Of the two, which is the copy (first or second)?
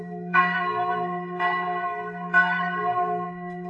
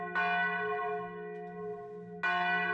first